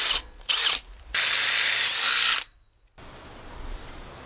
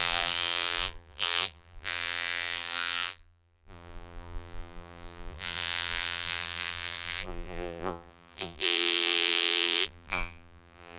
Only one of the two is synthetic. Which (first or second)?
second